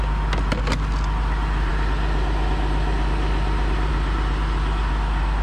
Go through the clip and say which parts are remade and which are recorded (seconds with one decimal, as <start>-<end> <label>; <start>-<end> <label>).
0.0-5.4 recorded